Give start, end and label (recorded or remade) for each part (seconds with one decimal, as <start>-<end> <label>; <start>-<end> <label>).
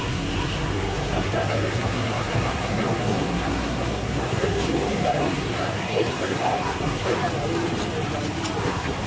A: 0.0-7.2 remade; 7.2-8.6 recorded; 8.6-9.1 remade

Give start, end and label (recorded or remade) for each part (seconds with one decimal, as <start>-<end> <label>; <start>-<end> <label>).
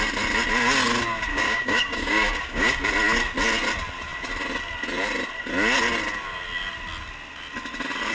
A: 0.0-1.3 recorded; 1.3-2.9 remade; 2.9-8.1 recorded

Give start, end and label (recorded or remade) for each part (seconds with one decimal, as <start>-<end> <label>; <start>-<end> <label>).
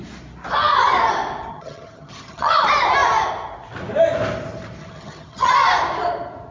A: 0.0-1.5 recorded; 1.5-2.5 remade; 2.5-4.8 recorded; 4.8-5.5 remade; 5.5-6.5 recorded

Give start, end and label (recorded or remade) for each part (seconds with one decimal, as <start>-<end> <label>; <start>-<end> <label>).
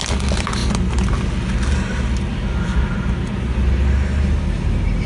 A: 0.0-5.1 recorded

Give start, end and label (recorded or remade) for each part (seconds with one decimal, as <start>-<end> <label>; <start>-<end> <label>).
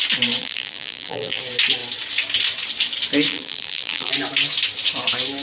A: 0.0-0.4 recorded; 0.4-1.4 remade; 1.4-3.3 recorded; 3.3-4.1 remade; 4.1-5.4 recorded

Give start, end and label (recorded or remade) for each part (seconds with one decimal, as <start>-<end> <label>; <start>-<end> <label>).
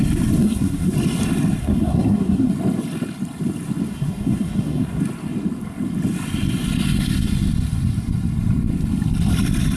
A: 0.0-0.4 recorded; 0.4-0.9 remade; 0.9-1.6 recorded; 1.6-2.5 remade; 2.5-3.9 recorded; 3.9-5.0 remade; 5.0-9.8 recorded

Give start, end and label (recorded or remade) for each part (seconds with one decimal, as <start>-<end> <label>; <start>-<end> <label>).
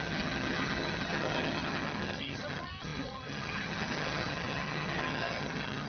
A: 0.0-5.9 remade